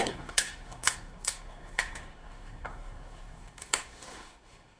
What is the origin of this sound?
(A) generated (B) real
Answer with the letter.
A